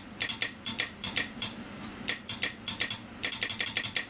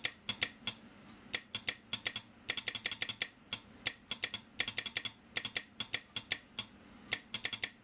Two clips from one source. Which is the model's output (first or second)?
first